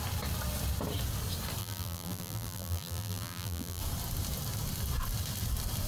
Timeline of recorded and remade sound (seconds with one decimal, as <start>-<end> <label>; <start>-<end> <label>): 0.0-1.6 recorded; 1.6-3.8 remade; 3.8-5.9 recorded